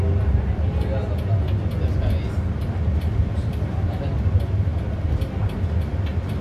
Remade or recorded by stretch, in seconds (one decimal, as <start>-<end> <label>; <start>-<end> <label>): 0.0-3.3 recorded; 3.3-4.0 remade; 4.0-6.4 recorded